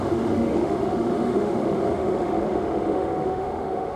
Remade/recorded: remade